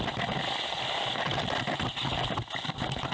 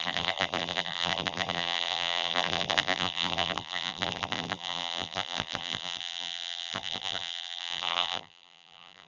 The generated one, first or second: second